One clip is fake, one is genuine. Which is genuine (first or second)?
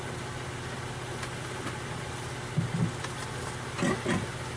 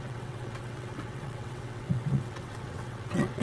first